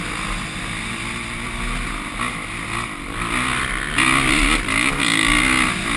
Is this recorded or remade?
recorded